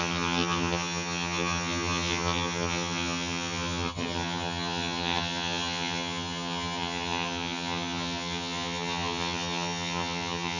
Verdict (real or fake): fake